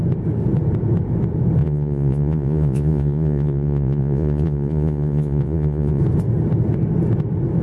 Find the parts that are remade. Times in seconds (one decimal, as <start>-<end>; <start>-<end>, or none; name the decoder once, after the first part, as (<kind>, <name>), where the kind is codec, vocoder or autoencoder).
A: 1.6-6.0 (vocoder, Vocos)